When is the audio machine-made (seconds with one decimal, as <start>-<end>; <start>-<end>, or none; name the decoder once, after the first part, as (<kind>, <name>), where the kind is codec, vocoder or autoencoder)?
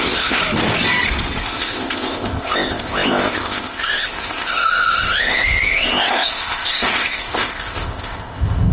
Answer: 0.0-0.4 (codec, ZipCodec); 1.4-8.7